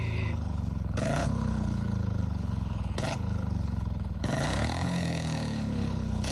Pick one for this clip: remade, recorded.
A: remade